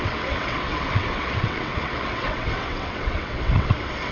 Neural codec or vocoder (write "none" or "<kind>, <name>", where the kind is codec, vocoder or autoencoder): vocoder, WaveNeXt